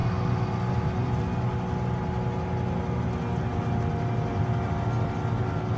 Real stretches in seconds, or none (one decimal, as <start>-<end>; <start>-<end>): 0.0-5.8